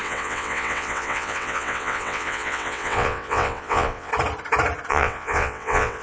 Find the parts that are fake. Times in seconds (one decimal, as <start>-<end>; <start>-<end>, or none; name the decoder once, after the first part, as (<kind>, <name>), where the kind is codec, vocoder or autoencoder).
0.0-4.1 (vocoder, WaveNeXt); 4.9-6.0